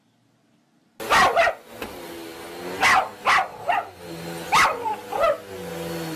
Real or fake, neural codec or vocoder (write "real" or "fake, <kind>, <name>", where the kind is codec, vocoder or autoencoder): real